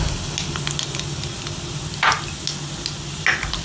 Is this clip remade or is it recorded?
recorded